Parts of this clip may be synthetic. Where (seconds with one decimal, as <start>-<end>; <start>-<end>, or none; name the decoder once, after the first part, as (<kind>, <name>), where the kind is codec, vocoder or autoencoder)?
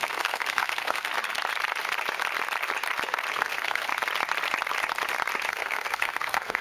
0.0-1.1 (codec, SNAC); 3.3-3.9; 5.5-6.6